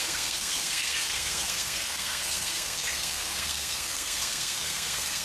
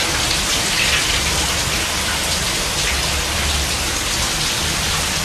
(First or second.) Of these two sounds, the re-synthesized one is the first